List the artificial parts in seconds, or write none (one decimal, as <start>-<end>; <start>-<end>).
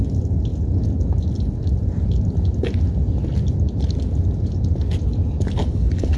5.6-6.2